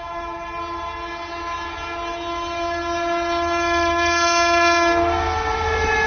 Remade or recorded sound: recorded